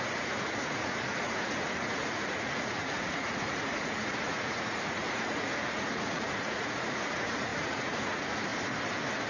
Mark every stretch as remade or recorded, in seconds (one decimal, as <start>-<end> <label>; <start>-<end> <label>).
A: 0.0-8.5 remade; 8.5-9.3 recorded